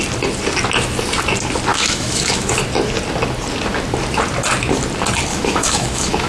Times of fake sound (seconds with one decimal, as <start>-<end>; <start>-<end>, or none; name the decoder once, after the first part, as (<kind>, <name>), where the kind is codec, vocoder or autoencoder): 1.7-2.5 (autoencoder, DAC-VAE); 5.3-6.3